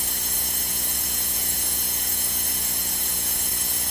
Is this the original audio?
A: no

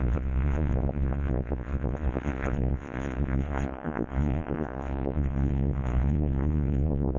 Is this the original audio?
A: no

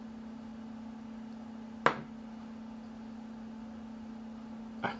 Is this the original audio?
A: yes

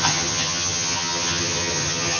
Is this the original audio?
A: no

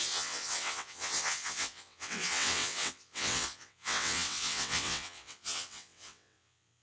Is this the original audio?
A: no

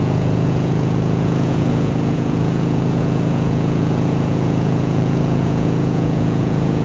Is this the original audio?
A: no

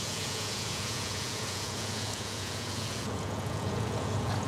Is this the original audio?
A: no